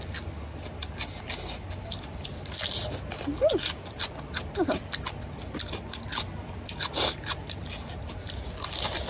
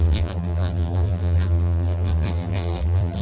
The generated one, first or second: second